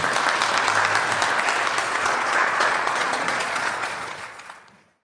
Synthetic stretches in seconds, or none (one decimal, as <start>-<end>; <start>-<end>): 1.8-5.0